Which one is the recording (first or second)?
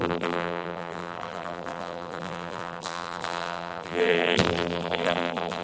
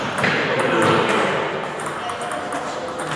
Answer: second